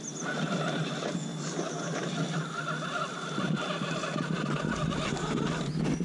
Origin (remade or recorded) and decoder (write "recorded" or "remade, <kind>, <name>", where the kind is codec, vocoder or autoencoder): recorded